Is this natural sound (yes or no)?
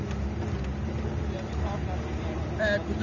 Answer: yes